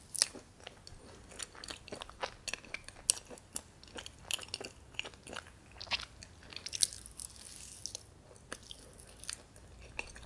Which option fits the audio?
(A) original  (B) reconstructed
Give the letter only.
A